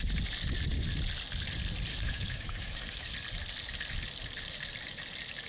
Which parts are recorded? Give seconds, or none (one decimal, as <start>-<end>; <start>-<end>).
0.0-1.9; 3.1-5.5

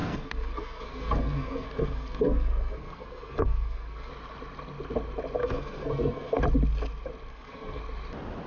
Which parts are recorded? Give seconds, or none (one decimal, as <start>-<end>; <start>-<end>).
4.1-5.4; 6.4-7.3; 7.8-8.5

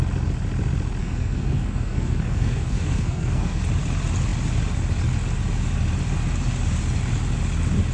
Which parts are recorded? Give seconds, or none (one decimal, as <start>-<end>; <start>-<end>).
0.0-1.0; 3.6-7.9